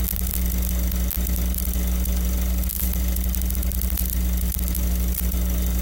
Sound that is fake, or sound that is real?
real